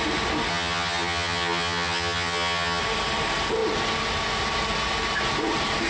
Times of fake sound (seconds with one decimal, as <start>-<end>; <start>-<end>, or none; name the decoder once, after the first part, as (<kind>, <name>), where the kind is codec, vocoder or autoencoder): 0.5-2.8 (vocoder, HiFi-GAN)